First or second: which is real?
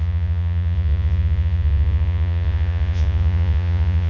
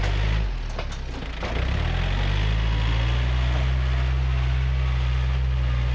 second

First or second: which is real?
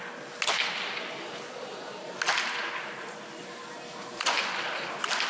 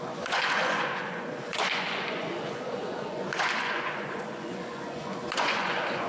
first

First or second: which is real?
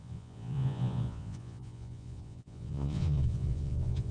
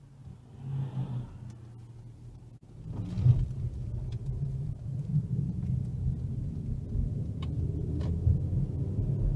second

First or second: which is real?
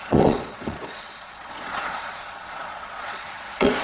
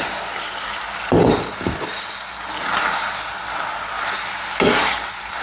second